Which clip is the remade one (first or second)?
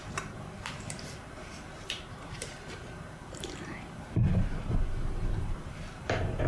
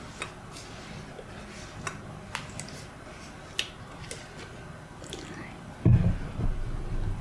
first